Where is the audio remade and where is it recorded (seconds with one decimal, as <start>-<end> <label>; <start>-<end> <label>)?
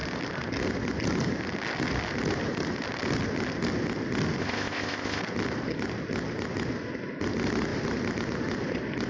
0.0-4.4 recorded; 4.4-5.2 remade; 5.2-9.1 recorded